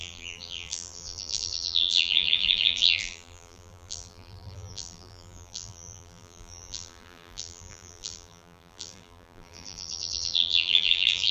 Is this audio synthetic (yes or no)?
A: yes